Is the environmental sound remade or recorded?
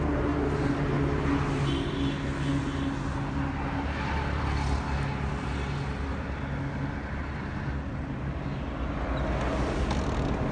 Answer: recorded